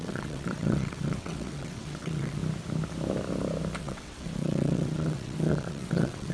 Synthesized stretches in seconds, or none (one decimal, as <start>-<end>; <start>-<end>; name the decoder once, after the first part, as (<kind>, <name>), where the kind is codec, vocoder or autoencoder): 0.0-2.4 (vocoder, WaveNeXt); 3.8-6.3